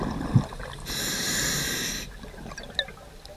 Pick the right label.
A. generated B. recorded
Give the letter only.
B